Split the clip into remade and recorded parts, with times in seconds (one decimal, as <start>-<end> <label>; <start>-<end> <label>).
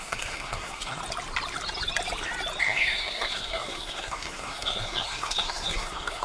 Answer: 0.0-1.0 remade; 1.0-2.6 recorded; 2.6-6.2 remade